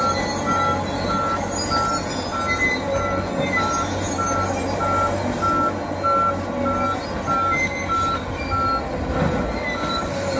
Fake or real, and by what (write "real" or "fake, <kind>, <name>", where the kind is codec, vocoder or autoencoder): real